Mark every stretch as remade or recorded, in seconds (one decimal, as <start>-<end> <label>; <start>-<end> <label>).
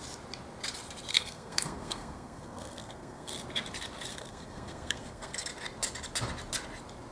0.0-1.1 recorded; 1.1-3.3 remade; 3.3-4.1 recorded; 4.1-5.5 remade; 5.5-7.1 recorded